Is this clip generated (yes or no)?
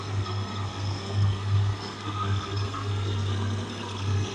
yes